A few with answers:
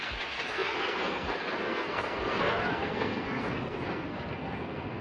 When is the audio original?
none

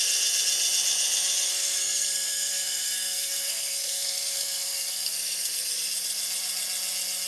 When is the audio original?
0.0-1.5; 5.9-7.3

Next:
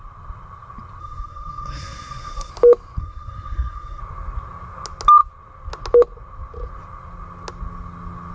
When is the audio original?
0.0-1.0; 2.5-3.0; 4.0-8.3